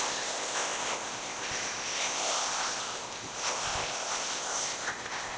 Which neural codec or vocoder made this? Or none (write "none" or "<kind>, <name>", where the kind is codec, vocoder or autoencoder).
codec, ZipCodec